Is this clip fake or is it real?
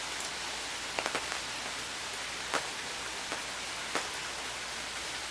real